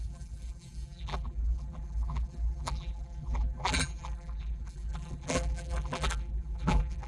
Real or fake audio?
fake